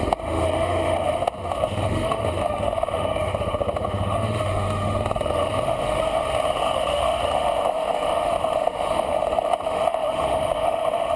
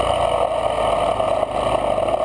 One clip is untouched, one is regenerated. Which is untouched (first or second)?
second